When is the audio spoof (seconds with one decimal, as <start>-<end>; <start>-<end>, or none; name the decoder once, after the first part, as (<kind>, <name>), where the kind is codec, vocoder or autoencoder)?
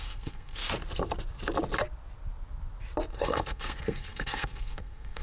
0.0-0.6 (codec, SNAC); 3.1-5.2